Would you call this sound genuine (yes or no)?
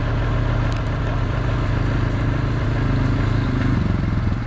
no